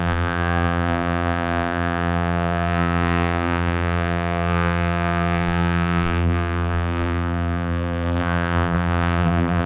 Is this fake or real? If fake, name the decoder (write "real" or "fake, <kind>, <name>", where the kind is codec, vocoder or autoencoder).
fake, vocoder, BigVGAN v2